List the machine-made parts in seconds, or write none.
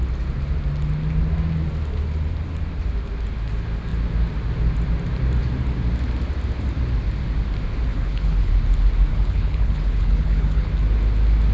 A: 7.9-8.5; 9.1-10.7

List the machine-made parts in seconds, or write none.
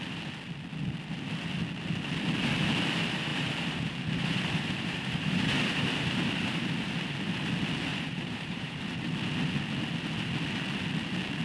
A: 3.3-6.9; 7.9-8.8